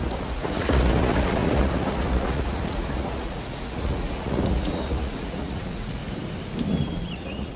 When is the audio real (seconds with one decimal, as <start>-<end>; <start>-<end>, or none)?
6.0-6.8